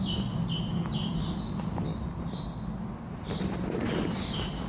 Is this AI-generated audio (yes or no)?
no